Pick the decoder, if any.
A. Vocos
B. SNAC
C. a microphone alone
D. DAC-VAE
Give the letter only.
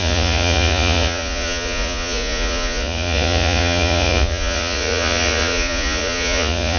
A